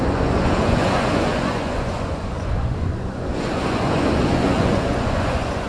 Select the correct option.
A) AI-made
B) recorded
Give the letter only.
A